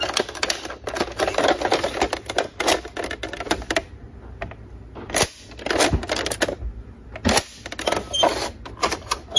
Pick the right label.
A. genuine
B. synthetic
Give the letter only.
A